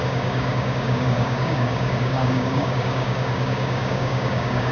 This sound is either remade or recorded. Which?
remade